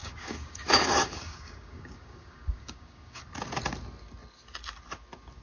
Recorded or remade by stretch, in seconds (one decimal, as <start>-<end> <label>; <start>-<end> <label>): 0.0-3.2 remade; 3.2-5.4 recorded